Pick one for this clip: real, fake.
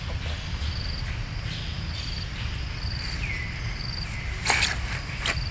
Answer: real